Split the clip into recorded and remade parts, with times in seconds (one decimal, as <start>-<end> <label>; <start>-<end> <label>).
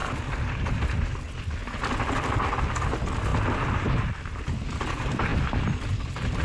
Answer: 0.0-6.4 recorded